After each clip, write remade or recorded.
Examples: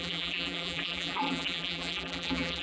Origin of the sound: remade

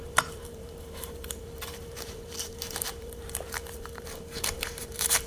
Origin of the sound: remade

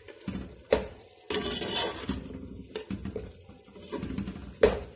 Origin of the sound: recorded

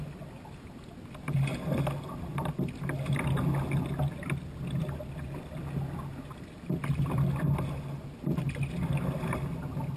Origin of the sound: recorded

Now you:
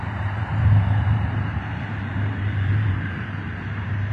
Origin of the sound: remade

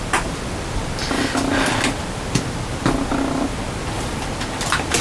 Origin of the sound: recorded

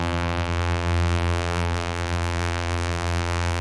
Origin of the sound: remade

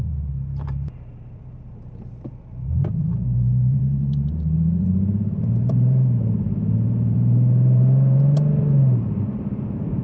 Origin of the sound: remade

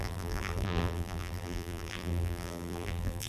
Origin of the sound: remade